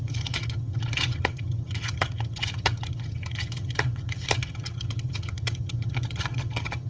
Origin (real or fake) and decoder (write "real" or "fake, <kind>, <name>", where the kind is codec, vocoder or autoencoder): fake, vocoder, HiFi-GAN